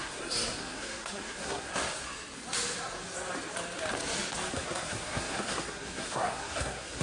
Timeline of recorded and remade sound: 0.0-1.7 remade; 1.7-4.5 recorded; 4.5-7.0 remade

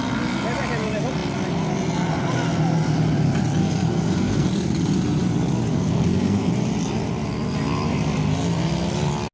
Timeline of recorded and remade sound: 0.0-3.6 recorded; 3.6-4.5 remade; 4.5-5.7 recorded; 5.7-6.5 remade; 6.5-9.3 recorded

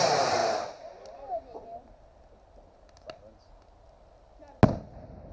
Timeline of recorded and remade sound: 0.0-5.3 recorded

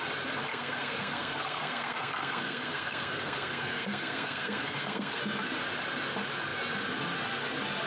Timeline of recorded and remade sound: 0.0-0.5 recorded; 0.5-5.2 remade; 5.2-7.9 recorded

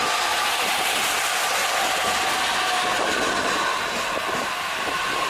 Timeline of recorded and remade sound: 0.0-5.3 recorded

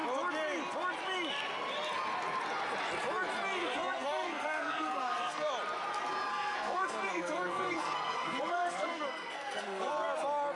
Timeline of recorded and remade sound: 0.0-3.6 recorded; 3.6-5.5 remade; 5.5-6.3 recorded; 6.3-9.9 remade; 9.9-10.6 recorded

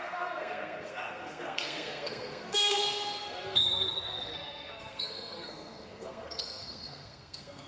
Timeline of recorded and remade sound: 0.0-7.7 remade

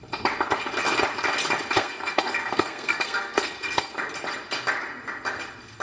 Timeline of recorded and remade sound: 0.0-1.8 recorded; 1.8-3.9 remade; 3.9-5.8 recorded